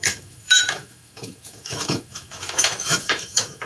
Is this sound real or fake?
fake